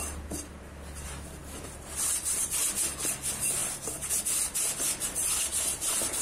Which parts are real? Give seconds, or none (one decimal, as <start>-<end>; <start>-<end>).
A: 0.0-1.4; 2.7-5.5